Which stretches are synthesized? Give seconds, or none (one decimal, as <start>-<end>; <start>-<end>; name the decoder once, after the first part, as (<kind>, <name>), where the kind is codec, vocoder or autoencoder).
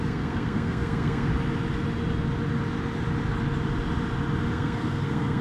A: 0.0-1.3 (codec, SNAC); 4.5-5.4